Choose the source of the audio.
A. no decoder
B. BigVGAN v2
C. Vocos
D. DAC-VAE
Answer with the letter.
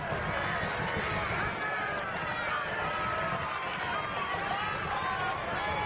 A